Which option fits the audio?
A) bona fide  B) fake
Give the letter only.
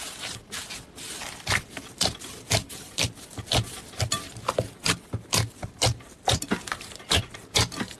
B